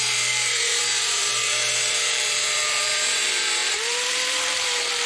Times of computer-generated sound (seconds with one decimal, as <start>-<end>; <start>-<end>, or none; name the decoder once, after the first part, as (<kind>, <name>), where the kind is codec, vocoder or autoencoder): 0.0-5.1 (vocoder, BigVGAN v2)